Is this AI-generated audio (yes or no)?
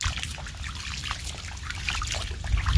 no